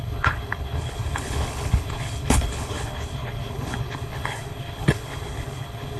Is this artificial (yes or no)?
yes